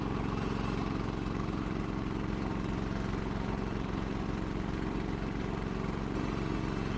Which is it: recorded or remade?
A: recorded